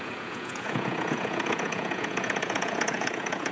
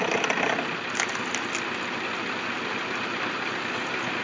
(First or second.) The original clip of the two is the second